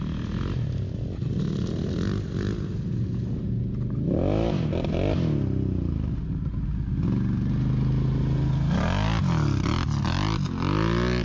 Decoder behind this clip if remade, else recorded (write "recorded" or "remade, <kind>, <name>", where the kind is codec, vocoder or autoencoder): recorded